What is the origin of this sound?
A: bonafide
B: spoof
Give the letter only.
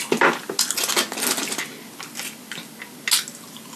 A